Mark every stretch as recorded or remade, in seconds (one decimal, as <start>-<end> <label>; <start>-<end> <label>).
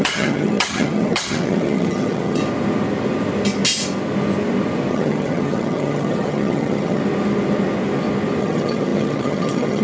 0.0-2.4 remade; 2.4-4.9 recorded; 4.9-7.0 remade; 7.0-8.4 recorded; 8.4-9.8 remade